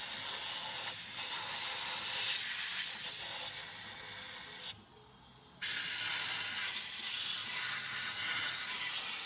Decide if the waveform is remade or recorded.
recorded